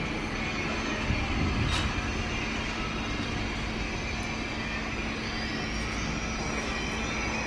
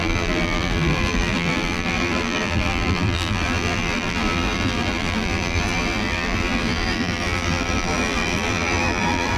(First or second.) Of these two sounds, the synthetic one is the second